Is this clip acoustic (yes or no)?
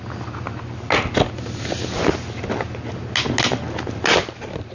yes